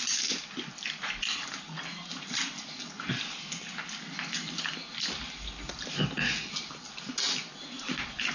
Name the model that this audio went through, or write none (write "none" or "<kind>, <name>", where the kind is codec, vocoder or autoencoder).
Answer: none